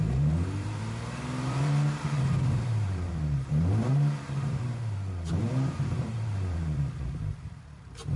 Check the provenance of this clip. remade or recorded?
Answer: remade